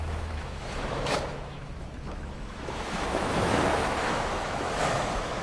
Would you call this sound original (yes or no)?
no